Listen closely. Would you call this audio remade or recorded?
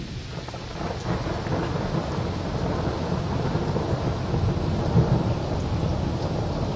recorded